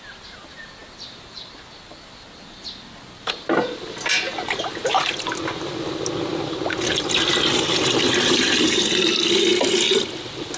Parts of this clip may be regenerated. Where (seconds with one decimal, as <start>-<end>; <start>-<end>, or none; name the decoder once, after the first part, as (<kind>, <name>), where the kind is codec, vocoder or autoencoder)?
none